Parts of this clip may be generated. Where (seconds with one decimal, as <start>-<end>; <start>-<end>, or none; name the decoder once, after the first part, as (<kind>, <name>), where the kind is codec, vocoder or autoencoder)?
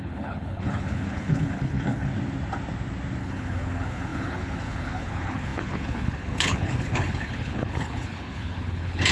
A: 0.0-2.1 (codec, HILCodec); 3.2-9.1